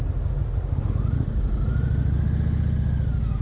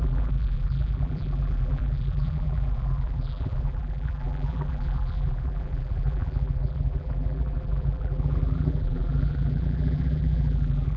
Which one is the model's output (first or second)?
second